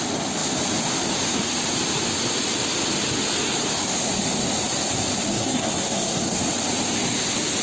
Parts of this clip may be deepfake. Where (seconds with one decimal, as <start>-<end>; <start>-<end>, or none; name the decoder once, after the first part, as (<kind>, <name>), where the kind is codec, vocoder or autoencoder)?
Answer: 5.3-6.4 (codec, SNAC)